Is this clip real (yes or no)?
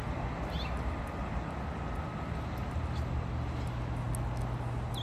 yes